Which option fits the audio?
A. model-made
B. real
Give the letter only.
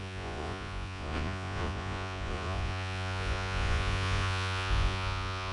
A